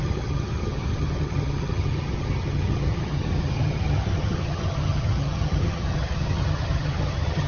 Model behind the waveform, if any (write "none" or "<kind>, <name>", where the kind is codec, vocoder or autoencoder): vocoder, HiFi-GAN